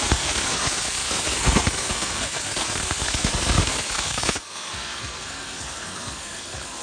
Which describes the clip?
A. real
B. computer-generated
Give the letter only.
B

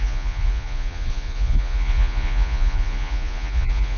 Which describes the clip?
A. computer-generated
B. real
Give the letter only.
A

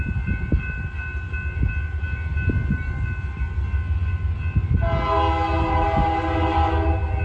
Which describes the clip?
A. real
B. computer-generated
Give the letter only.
A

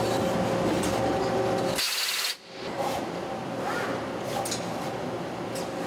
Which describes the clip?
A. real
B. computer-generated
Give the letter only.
A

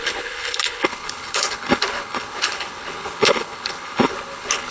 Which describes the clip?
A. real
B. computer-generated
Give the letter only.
B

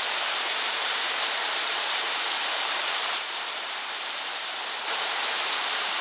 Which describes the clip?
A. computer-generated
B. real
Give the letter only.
A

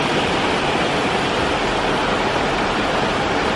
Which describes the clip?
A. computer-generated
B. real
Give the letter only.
B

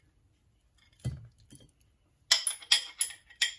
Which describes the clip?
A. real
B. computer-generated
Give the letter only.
A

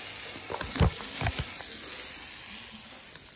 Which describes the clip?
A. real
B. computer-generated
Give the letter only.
A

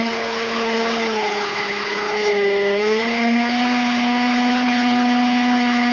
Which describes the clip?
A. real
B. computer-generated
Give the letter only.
B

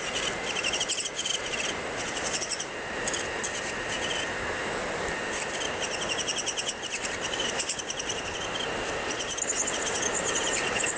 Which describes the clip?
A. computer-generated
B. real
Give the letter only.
B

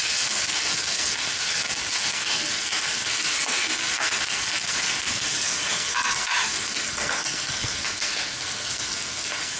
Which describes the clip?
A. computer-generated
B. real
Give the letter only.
A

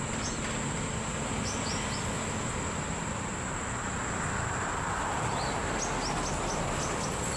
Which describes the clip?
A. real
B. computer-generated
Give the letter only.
A